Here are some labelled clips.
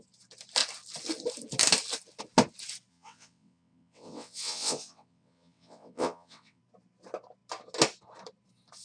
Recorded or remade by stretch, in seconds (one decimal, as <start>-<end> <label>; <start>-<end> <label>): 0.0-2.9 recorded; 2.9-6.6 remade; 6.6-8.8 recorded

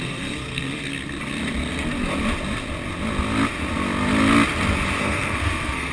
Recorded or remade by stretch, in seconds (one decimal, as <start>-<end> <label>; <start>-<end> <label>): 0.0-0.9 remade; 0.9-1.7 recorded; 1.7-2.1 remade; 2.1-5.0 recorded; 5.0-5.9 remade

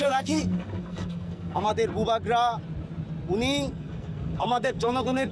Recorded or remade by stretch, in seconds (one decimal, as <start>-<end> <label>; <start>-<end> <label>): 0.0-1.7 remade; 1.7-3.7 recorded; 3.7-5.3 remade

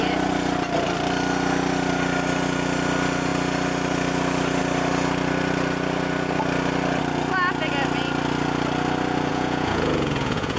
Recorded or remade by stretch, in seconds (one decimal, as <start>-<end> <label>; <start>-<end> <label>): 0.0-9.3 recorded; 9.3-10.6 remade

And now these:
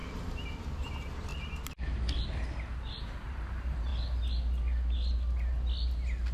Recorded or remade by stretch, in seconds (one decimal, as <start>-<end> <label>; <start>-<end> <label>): 0.0-0.6 recorded; 0.6-1.3 remade; 1.3-3.0 recorded; 3.0-3.9 remade; 3.9-6.3 recorded

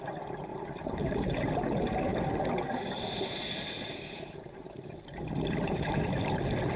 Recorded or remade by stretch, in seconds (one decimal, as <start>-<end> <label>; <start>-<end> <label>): 0.0-6.8 recorded